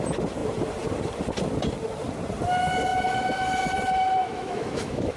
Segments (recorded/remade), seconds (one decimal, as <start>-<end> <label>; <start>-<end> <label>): 0.0-4.2 recorded; 4.2-5.2 remade